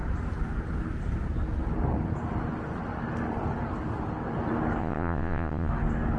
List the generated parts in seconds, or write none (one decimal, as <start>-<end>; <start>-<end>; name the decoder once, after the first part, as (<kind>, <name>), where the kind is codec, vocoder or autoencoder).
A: 4.8-5.7 (vocoder, Vocos)